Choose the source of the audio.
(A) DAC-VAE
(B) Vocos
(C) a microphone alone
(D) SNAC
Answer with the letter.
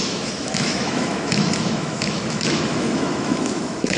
A